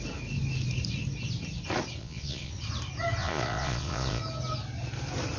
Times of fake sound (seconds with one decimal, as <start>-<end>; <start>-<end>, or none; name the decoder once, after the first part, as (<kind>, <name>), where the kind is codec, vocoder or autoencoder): 2.0-2.5 (vocoder, Vocos); 3.2-4.2